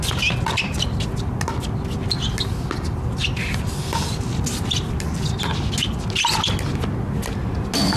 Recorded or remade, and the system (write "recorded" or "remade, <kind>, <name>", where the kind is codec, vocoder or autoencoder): recorded